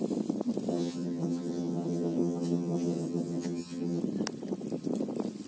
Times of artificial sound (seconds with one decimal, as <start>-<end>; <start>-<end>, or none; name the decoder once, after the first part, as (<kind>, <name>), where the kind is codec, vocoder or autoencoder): 0.7-4.0 (vocoder, HiFi-GAN)